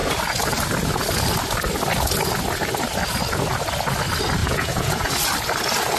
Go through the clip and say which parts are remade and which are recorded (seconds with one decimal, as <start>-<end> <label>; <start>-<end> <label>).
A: 0.0-4.4 recorded; 4.4-5.1 remade; 5.1-6.0 recorded